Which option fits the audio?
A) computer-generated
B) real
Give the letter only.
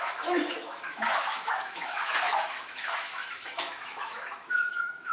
A